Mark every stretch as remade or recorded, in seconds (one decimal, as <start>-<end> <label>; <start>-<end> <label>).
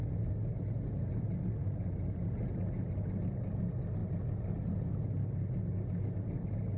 0.0-6.8 recorded